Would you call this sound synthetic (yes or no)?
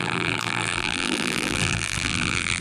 yes